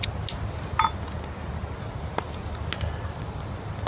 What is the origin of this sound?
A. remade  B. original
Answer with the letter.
B